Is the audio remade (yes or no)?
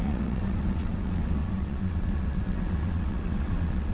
yes